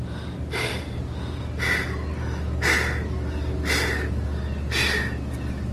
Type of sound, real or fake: real